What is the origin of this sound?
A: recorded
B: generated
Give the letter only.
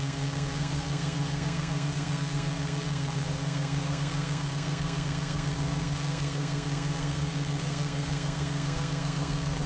B